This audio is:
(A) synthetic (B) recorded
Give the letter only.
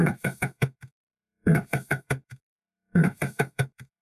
A